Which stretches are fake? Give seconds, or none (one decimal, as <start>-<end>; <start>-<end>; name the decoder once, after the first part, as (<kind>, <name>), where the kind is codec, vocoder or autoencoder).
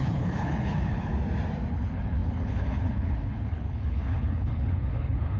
0.0-1.1 (codec, HILCodec); 1.7-5.4